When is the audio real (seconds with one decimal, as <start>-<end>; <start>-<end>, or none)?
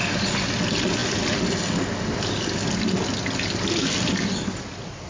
0.0-5.1